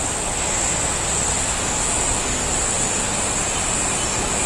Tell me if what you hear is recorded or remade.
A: recorded